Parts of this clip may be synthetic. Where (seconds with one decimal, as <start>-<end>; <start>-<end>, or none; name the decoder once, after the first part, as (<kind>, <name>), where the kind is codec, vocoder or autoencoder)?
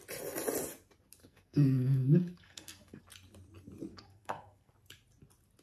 1.2-3.0 (codec, SNAC); 3.9-4.7